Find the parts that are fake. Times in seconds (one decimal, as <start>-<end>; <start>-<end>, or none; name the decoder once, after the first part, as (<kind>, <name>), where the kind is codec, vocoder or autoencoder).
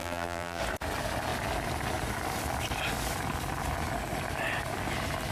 0.0-0.6 (vocoder, BigVGAN v2)